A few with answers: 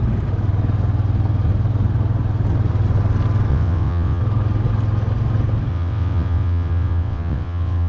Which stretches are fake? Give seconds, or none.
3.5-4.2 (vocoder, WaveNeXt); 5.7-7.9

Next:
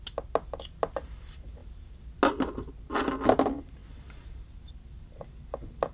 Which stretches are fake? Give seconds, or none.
none